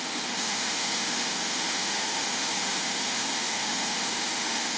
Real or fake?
fake